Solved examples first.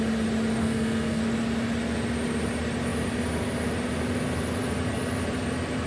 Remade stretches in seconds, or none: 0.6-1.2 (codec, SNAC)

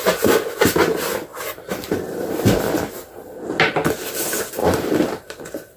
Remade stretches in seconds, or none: 1.3-2.3 (vocoder, BigVGAN v2); 4.6-5.8

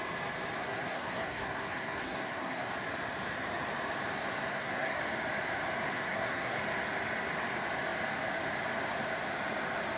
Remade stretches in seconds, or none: 0.6-2.7 (codec, SNAC); 4.4-5.0; 5.9-6.6

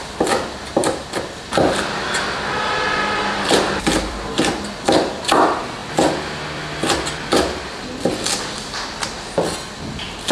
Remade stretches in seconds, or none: 0.8-4.4 (vocoder, BigVGAN v2)

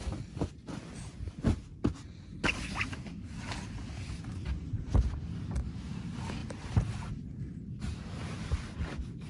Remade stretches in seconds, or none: 4.3-5.2 (vocoder, BigVGAN v2); 6.4-7.1